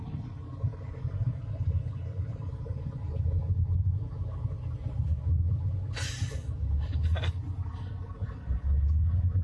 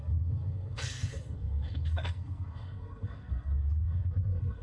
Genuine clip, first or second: first